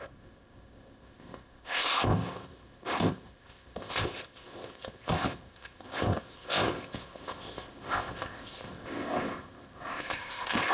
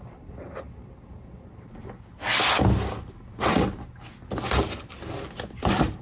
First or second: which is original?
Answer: second